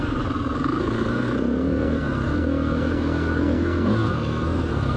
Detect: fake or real fake